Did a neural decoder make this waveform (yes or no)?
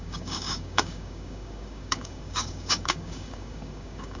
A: yes